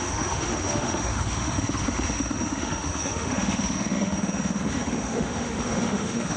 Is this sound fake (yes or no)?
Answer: yes